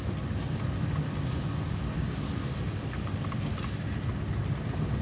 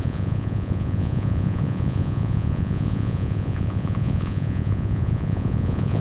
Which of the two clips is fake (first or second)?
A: second